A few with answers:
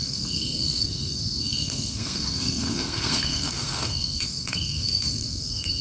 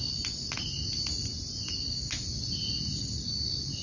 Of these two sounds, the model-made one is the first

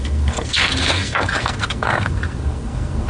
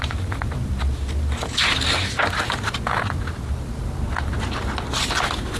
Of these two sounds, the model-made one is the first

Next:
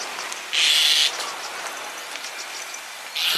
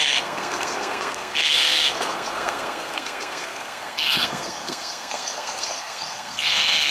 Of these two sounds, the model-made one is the second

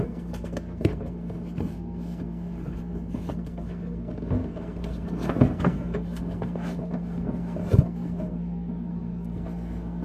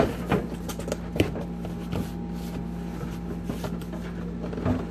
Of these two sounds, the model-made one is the first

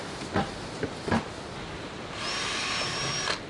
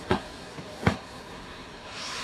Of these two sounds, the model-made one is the second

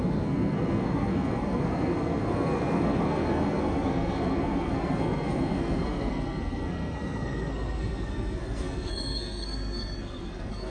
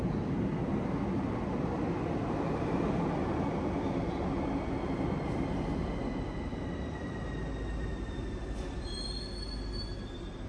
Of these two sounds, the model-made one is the first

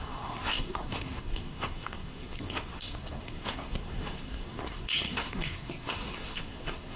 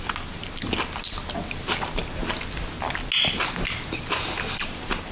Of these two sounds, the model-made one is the first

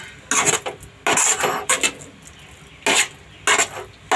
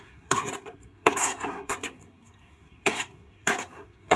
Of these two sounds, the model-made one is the second